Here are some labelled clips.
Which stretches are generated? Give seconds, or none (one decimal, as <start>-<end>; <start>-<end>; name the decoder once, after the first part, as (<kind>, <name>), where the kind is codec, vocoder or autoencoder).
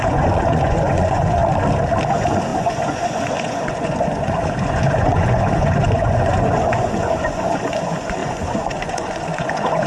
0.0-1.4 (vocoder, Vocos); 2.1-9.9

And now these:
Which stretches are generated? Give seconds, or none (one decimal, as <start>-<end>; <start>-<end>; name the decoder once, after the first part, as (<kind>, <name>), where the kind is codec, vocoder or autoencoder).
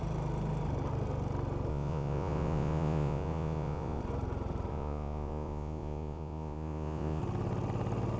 1.7-4.0 (vocoder, Vocos); 4.7-7.2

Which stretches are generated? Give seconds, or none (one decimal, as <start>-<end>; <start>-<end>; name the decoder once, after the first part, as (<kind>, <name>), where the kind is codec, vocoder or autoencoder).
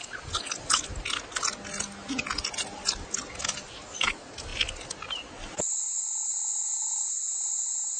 none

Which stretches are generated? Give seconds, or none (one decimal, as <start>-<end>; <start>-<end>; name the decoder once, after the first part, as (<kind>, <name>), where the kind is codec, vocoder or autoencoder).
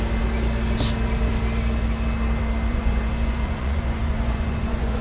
2.7-5.0 (vocoder, Vocos)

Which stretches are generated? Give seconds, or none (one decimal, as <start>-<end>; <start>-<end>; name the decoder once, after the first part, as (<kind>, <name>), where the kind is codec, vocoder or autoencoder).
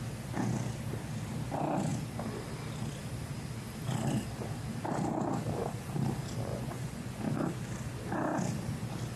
6.5-7.2 (vocoder, Vocos)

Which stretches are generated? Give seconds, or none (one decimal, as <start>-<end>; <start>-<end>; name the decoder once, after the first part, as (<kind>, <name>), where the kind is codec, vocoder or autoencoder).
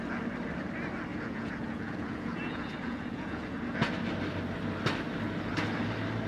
1.1-3.9 (vocoder, Vocos)